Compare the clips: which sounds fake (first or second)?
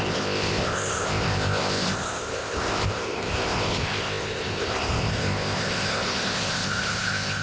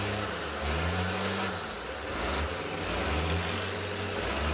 first